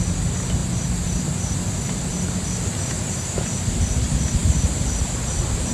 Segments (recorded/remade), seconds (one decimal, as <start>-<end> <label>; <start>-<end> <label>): 0.0-5.7 recorded